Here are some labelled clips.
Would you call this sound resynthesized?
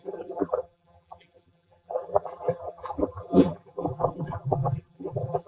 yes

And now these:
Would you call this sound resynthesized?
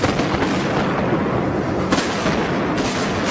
no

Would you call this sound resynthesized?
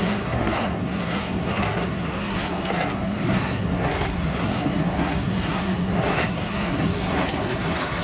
yes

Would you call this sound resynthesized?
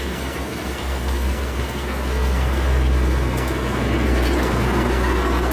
yes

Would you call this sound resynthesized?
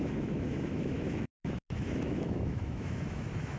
yes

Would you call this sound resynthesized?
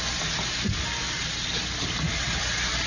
no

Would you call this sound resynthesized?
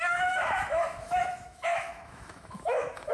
yes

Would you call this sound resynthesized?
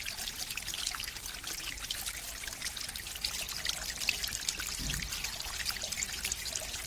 no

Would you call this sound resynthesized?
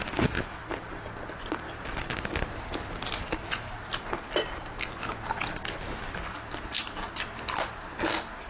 no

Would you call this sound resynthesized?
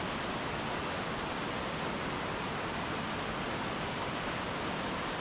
no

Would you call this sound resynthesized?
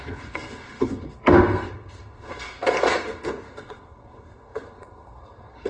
yes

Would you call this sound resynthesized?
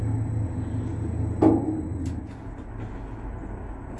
no